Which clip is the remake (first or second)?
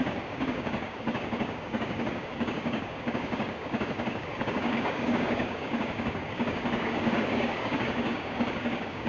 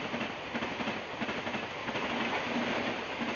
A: first